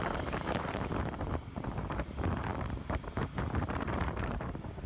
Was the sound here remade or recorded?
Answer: remade